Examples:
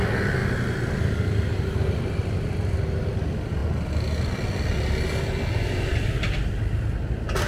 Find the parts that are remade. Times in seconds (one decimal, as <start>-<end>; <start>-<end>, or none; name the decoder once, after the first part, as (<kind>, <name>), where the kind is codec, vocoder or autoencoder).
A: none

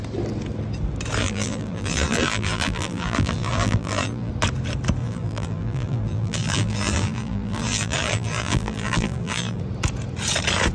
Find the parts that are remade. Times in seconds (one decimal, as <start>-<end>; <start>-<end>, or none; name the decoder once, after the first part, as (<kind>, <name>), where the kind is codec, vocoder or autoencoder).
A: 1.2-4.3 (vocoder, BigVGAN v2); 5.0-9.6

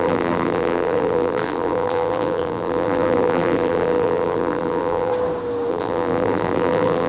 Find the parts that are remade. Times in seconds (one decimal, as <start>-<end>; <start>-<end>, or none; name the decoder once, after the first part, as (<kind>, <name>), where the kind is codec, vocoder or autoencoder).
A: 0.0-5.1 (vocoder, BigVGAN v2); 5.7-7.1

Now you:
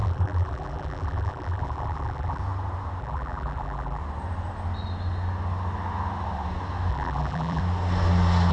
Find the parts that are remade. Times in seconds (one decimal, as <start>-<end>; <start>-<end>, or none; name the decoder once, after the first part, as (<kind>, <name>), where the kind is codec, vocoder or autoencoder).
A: 0.0-2.4 (vocoder, BigVGAN v2); 3.0-4.0; 6.9-7.6

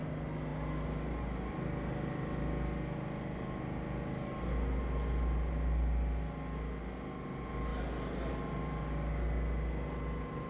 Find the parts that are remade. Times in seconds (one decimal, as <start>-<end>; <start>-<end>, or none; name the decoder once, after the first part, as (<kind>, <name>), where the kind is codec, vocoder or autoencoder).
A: none

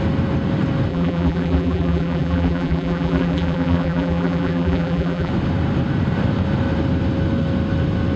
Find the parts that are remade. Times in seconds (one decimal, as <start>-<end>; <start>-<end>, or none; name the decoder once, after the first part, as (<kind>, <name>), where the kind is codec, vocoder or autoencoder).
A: 0.9-5.3 (vocoder, BigVGAN v2)